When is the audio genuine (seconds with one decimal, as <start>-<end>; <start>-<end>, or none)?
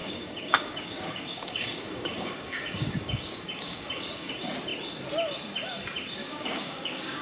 4.3-6.2